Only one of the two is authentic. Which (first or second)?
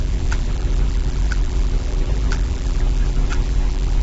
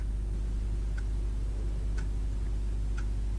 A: second